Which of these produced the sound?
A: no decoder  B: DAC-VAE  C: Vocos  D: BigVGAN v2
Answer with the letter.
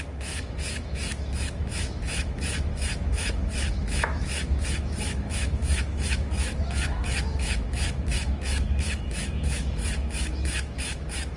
B